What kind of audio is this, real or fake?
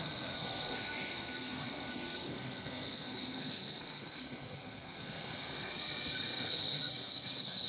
fake